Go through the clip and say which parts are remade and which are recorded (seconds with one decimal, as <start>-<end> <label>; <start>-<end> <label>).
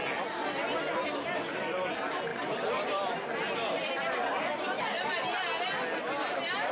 0.0-6.7 recorded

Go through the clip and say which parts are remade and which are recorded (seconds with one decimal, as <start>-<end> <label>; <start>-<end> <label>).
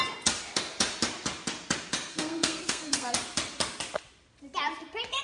0.0-2.1 recorded; 2.1-3.1 remade; 3.1-5.2 recorded